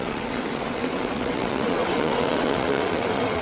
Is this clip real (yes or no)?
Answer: no